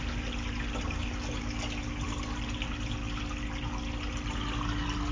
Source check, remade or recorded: recorded